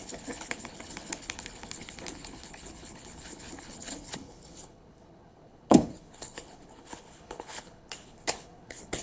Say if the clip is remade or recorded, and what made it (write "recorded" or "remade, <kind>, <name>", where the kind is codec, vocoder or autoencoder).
remade, codec, HILCodec